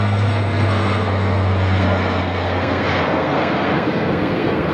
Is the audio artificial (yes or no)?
yes